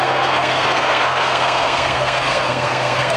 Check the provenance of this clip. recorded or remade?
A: remade